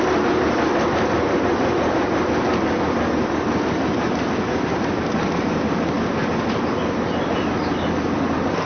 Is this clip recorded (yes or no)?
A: yes